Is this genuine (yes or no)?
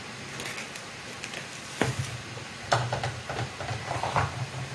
yes